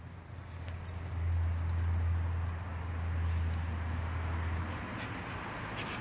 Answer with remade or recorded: recorded